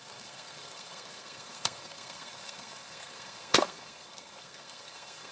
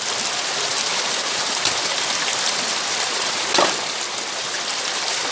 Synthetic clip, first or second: first